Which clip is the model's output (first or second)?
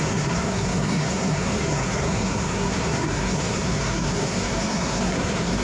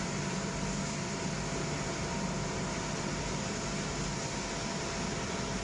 first